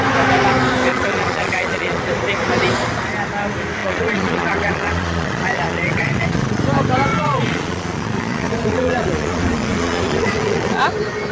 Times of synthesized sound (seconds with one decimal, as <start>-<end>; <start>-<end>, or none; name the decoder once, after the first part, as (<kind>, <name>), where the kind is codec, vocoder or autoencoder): 0.9-2.0 (vocoder, Vocos); 3.8-6.6; 7.1-10.8